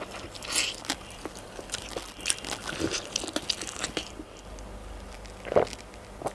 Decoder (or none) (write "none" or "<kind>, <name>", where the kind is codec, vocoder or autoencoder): none